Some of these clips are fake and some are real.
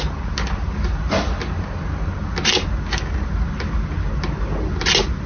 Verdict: real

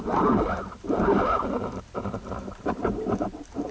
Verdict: fake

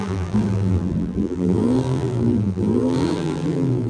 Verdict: fake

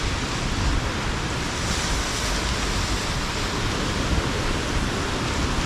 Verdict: real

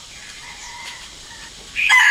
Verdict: fake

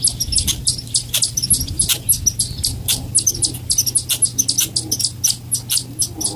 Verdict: real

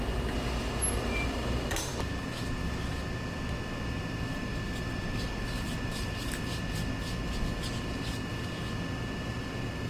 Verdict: real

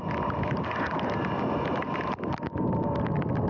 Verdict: real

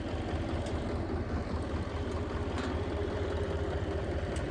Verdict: fake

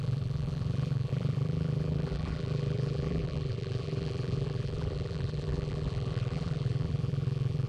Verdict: fake